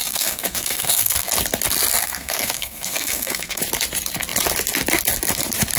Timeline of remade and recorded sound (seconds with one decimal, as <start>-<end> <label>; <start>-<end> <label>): 0.0-1.3 remade; 1.3-2.0 recorded; 2.0-3.6 remade; 3.6-5.8 recorded